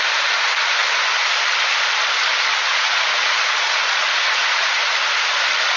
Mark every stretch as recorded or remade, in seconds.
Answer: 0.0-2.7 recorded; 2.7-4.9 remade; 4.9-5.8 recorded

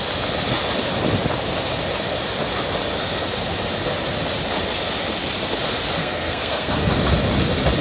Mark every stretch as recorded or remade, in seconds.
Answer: 0.0-6.0 recorded; 6.0-6.9 remade; 6.9-7.8 recorded

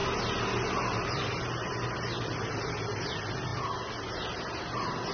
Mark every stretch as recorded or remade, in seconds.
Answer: 0.0-5.1 recorded

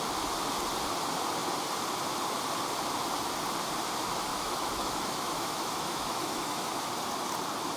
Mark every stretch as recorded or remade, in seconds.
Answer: 0.0-4.3 recorded; 4.3-6.9 remade; 6.9-7.8 recorded

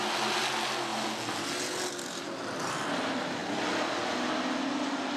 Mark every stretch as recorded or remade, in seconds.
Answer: 0.0-5.2 recorded

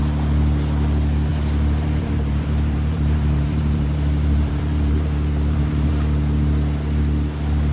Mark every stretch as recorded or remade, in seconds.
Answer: 0.0-1.3 recorded; 1.3-5.9 remade; 5.9-7.7 recorded

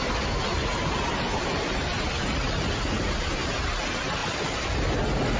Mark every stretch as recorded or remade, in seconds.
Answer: 0.0-5.4 recorded

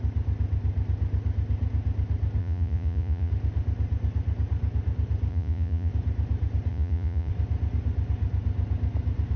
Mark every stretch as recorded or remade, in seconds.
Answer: 0.0-2.4 recorded; 2.4-3.3 remade; 3.3-5.3 recorded; 5.3-5.9 remade; 5.9-6.7 recorded; 6.7-7.3 remade; 7.3-9.4 recorded